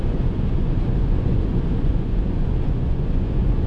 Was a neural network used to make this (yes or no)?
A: yes